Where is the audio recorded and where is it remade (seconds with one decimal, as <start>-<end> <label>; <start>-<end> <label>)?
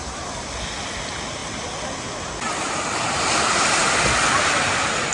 0.0-5.1 recorded